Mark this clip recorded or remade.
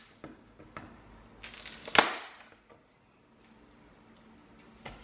recorded